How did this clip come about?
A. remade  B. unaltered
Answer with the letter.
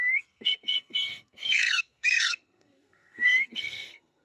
A